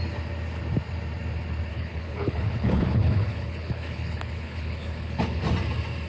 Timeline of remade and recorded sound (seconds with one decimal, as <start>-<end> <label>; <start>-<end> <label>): 0.0-1.7 recorded; 1.7-5.4 remade; 5.4-6.1 recorded